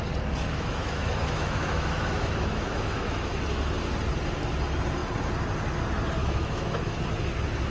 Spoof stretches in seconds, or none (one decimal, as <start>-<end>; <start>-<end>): 0.4-3.4; 6.2-7.0